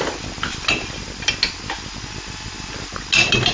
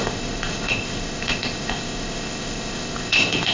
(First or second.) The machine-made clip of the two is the second